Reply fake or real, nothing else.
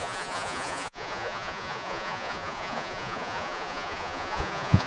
fake